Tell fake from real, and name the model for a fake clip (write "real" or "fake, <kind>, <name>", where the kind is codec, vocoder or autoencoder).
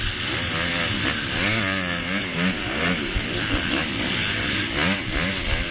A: real